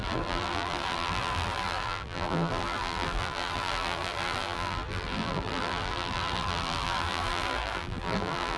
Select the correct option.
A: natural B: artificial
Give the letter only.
B